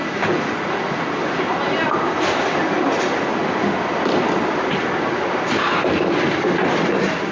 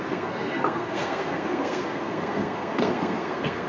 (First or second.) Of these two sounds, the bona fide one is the first